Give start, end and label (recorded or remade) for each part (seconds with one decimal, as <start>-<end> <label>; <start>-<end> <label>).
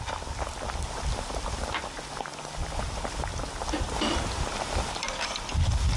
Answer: 0.0-6.0 recorded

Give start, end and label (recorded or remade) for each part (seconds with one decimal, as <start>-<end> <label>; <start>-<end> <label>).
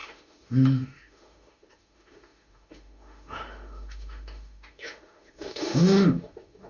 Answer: 0.0-6.7 remade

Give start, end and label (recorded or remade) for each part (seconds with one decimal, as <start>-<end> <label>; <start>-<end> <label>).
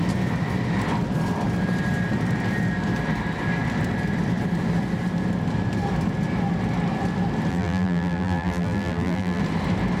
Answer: 0.0-7.5 recorded; 7.5-9.4 remade; 9.4-10.0 recorded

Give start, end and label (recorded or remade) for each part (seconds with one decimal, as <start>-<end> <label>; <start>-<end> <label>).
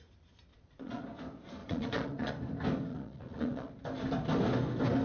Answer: 0.0-0.5 recorded; 0.5-1.0 remade; 1.0-1.6 recorded; 1.6-2.3 remade; 2.3-2.9 recorded; 2.9-3.7 remade; 3.7-5.0 recorded